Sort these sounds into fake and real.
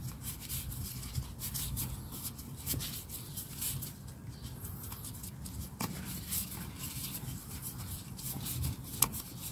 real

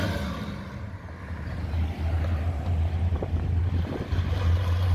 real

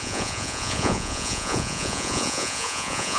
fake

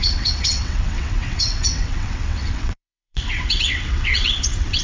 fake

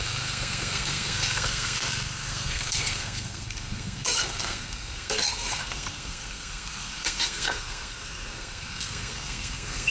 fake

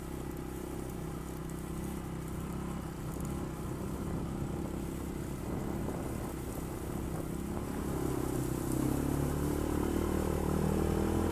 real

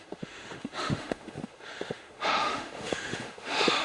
fake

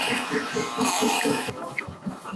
fake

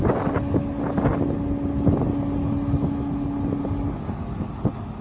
real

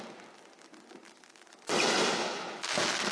real